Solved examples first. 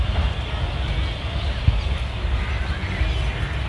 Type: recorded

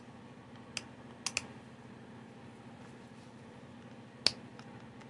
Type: recorded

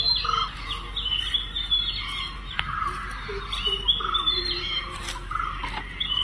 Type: recorded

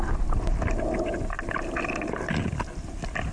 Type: recorded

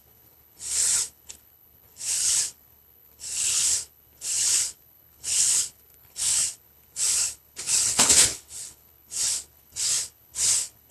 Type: remade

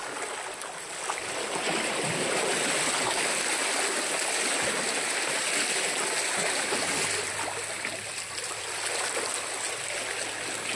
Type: recorded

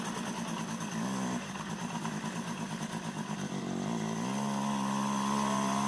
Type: recorded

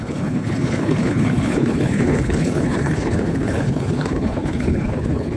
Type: remade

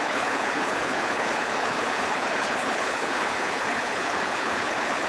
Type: remade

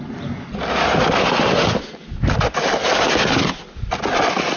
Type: recorded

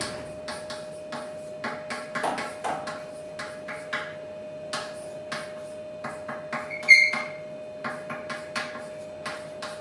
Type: recorded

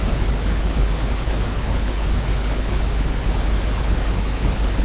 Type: remade